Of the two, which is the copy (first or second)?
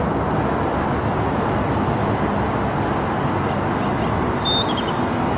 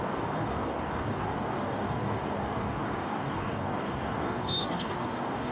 second